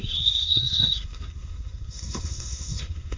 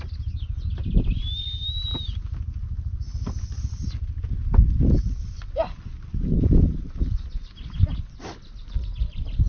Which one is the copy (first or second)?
first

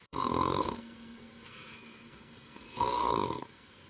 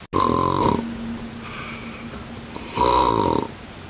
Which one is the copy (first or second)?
first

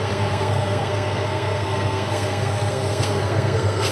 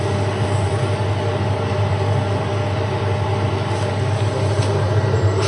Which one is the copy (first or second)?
first